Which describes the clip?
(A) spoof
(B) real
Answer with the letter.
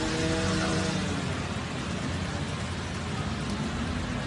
B